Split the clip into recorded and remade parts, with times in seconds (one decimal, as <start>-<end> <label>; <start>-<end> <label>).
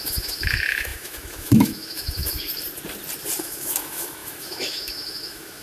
0.0-2.5 remade; 2.5-3.4 recorded; 3.4-5.6 remade